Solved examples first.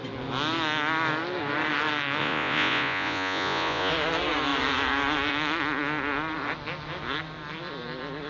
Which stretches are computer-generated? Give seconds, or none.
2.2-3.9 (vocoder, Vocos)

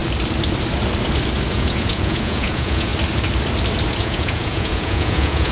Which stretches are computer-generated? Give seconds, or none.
1.5-2.9 (vocoder, Vocos); 4.0-5.5

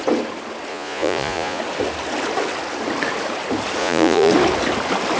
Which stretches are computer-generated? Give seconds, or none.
0.7-1.6 (vocoder, Vocos); 3.8-4.3

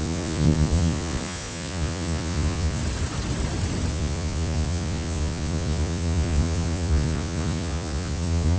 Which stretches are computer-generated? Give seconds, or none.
0.0-2.8 (vocoder, Vocos); 3.9-8.6

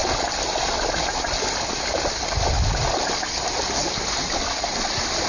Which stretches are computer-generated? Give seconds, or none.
none

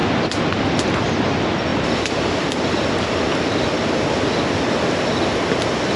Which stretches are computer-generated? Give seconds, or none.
none